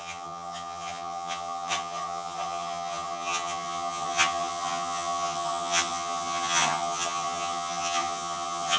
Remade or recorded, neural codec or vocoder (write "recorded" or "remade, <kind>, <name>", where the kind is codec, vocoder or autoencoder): remade, vocoder, HiFi-GAN